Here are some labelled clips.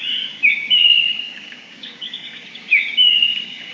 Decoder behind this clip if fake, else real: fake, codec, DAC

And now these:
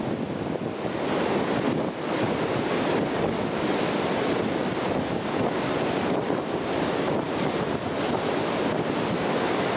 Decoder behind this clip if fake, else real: real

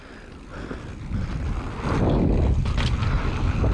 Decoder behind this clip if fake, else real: real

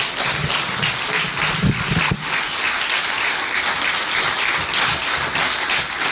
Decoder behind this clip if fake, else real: real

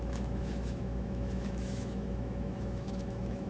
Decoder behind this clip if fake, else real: fake, autoencoder, DAC-VAE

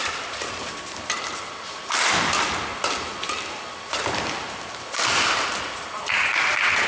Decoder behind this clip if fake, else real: real